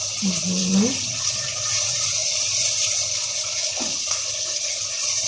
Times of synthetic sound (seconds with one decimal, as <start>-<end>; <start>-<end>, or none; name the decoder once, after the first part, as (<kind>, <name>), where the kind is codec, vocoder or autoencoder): 0.6-1.2 (vocoder, BigVGAN v2); 2.2-4.2